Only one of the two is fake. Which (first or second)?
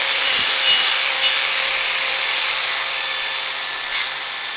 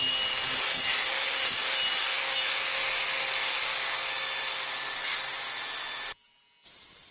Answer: first